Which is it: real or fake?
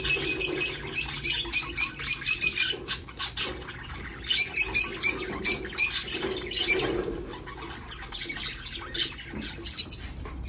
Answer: real